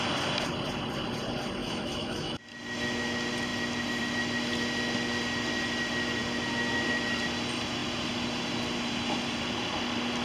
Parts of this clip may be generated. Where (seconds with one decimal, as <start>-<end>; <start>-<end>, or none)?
1.6-2.4